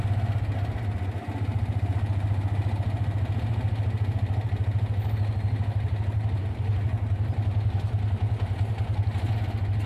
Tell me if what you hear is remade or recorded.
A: recorded